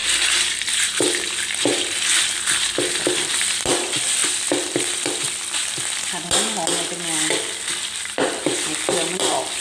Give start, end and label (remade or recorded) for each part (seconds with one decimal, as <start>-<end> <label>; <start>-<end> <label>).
0.0-3.1 recorded; 3.1-4.2 remade; 4.2-8.0 recorded; 8.0-9.6 remade